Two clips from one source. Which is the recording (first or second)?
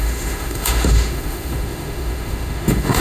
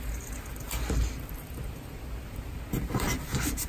second